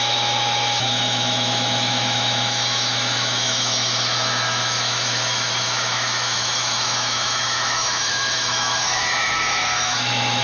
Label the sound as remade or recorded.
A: remade